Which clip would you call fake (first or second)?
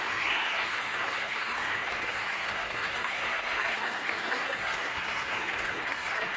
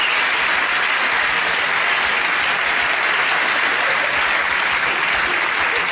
first